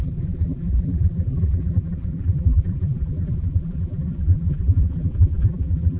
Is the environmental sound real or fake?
fake